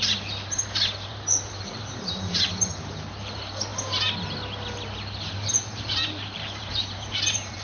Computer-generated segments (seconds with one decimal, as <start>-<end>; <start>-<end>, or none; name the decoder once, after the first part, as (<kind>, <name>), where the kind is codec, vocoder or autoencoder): 0.0-3.7 (vocoder, BigVGAN v2); 5.5-7.6